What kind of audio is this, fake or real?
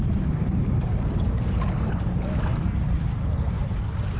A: fake